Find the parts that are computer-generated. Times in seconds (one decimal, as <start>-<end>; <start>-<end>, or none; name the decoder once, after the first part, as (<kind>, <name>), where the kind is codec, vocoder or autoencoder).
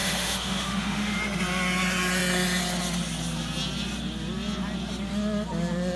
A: 0.0-1.2 (autoencoder, DAC-VAE)